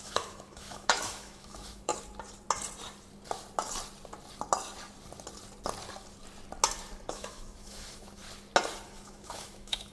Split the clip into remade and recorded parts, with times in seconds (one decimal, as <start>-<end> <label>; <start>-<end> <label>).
0.0-1.9 remade; 1.9-7.1 recorded; 7.1-8.2 remade; 8.2-8.9 recorded; 8.9-9.9 remade